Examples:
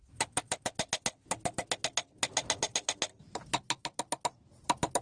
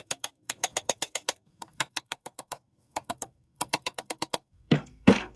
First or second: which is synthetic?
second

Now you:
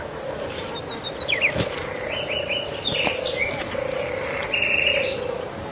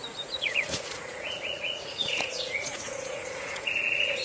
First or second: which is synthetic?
second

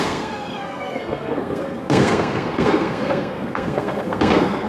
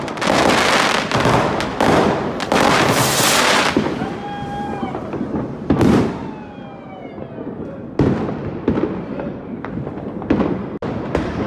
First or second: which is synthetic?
first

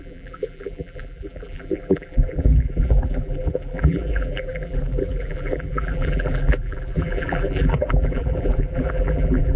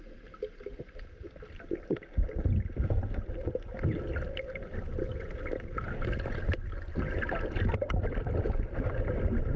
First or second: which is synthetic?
first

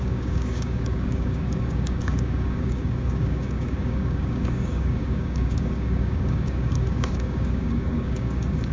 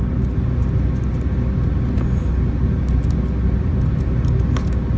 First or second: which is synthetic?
first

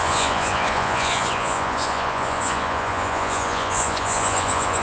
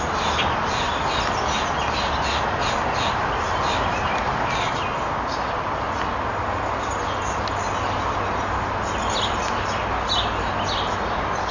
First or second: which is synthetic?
first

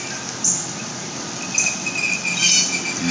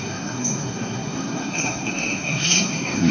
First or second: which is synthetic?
second